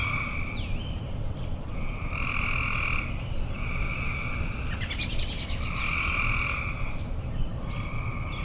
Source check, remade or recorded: recorded